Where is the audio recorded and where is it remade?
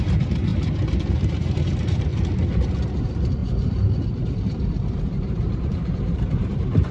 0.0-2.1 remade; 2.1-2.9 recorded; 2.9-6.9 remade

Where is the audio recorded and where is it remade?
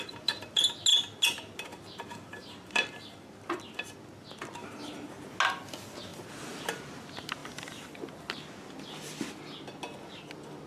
0.0-6.1 recorded; 6.1-6.6 remade; 6.6-7.4 recorded; 7.4-8.1 remade; 8.1-10.7 recorded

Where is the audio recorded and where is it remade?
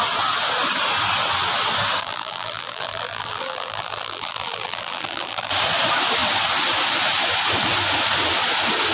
0.0-2.0 recorded; 2.0-5.5 remade; 5.5-8.9 recorded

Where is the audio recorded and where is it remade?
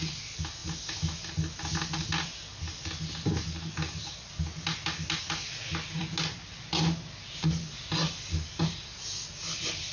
0.0-9.9 recorded